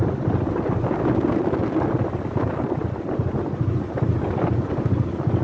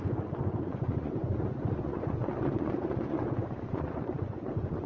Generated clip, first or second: second